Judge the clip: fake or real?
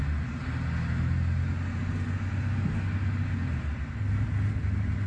real